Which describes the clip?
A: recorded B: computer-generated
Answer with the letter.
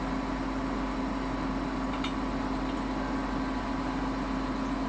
A